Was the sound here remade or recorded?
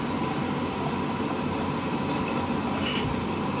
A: recorded